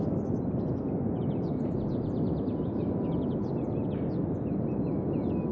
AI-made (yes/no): no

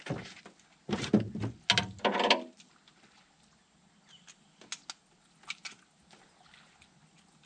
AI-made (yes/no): no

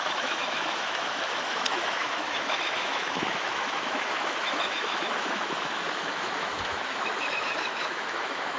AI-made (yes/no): yes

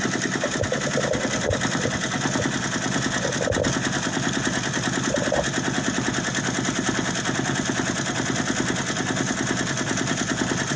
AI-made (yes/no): no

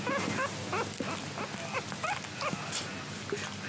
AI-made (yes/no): no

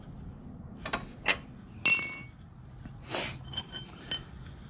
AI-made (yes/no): no